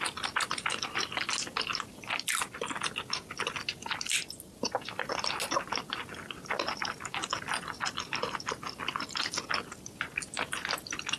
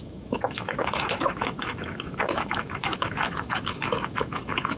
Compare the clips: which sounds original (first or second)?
first